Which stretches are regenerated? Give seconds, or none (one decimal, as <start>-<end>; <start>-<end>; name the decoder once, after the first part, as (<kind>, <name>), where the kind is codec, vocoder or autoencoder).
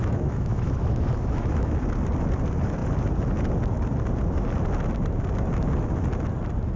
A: 0.0-1.7 (autoencoder, DAC-VAE)